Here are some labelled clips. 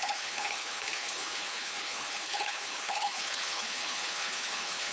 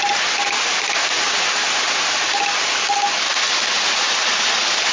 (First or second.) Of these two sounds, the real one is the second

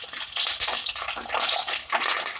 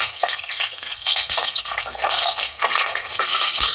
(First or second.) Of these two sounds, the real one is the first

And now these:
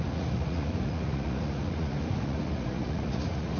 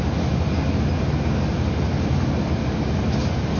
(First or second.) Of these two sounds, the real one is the second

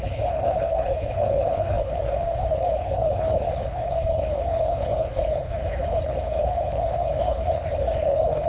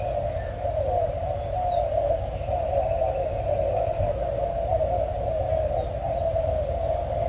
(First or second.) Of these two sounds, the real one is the second